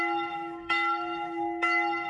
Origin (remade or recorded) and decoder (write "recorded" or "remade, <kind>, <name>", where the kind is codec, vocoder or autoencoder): remade, autoencoder, DAC-VAE